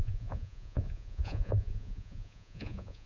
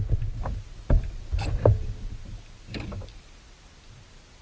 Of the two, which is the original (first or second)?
second